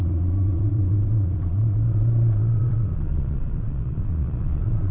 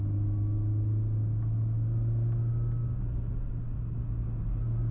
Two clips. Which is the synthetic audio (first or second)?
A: first